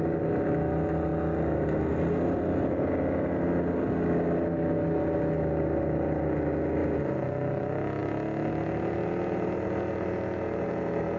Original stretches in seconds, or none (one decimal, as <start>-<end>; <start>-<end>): 0.0-11.2